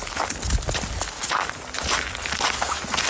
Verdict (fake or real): real